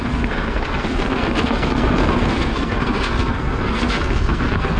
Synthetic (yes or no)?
yes